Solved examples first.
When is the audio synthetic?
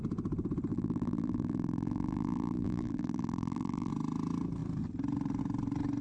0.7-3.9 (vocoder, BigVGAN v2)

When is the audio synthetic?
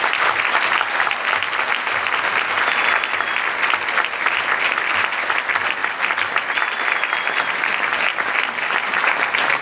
none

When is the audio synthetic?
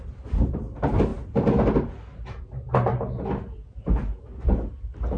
none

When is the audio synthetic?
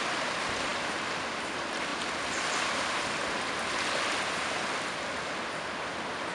none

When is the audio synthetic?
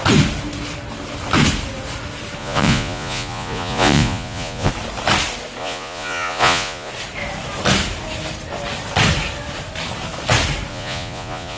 2.4-4.7 (vocoder, Vocos); 5.6-6.9; 10.7-11.6